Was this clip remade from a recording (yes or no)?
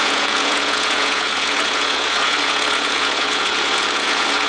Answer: yes